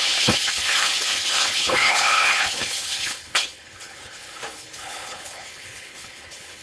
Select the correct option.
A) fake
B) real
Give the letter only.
A